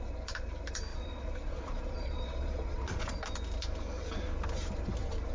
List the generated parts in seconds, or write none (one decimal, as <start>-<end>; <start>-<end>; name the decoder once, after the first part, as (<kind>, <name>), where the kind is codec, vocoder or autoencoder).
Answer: 0.9-3.2 (vocoder, Vocos)